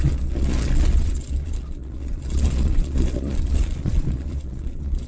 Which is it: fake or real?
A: fake